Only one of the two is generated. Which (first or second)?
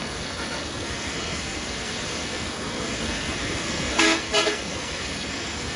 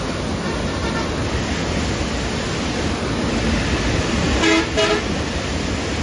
first